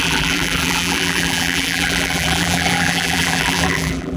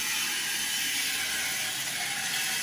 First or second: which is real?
second